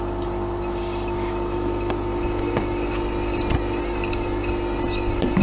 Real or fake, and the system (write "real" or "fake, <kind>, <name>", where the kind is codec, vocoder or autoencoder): real